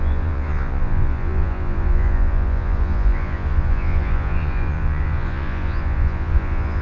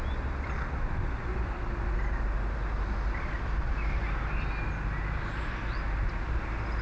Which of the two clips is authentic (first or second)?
second